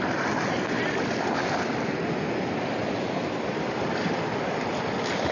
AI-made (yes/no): no